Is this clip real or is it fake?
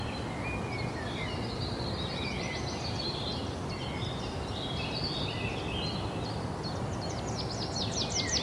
real